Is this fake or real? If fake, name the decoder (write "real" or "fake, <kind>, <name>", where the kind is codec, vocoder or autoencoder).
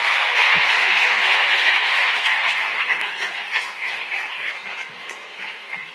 fake, codec, SNAC